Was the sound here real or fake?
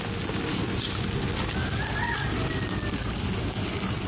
real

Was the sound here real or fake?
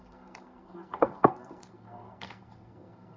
fake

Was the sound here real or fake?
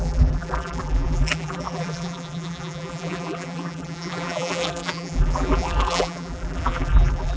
fake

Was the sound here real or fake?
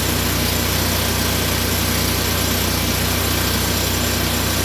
real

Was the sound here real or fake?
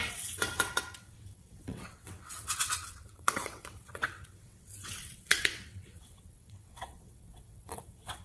fake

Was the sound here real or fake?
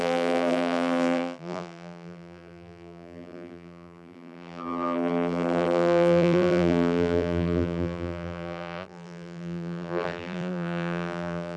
fake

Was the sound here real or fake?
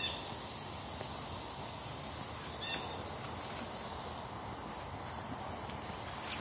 real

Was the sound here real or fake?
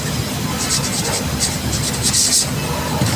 real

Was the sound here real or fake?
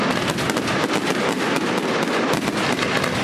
real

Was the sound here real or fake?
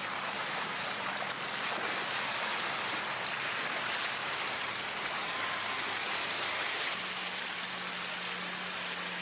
real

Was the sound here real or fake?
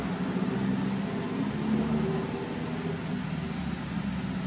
real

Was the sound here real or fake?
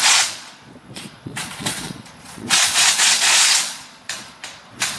fake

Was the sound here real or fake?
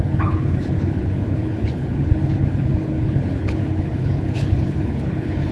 fake